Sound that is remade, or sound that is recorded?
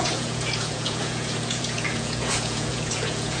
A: remade